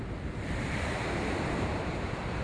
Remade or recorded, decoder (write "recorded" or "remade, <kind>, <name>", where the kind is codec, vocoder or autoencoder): recorded